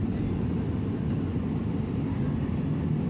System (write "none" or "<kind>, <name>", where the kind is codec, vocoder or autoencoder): none